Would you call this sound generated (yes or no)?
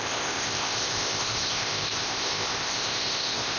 yes